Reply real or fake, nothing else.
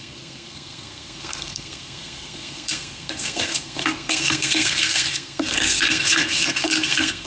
fake